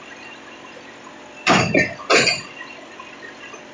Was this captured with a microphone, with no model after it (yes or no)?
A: yes